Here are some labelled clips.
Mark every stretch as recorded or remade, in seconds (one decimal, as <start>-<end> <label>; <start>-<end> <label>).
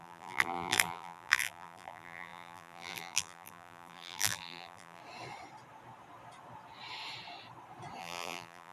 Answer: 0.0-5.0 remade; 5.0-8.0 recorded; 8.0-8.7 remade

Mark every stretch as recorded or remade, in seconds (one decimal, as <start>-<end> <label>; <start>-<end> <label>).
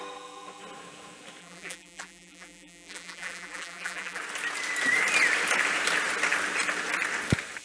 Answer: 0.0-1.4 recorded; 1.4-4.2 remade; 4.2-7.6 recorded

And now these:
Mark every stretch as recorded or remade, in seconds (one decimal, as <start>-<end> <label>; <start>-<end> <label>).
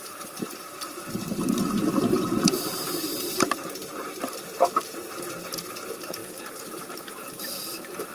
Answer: 0.0-8.1 remade